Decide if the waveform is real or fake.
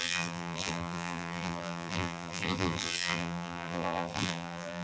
fake